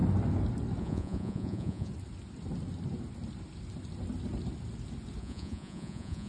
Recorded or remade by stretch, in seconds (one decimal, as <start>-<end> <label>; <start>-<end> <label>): 0.0-0.8 recorded; 0.8-1.9 remade; 1.9-5.2 recorded; 5.2-6.3 remade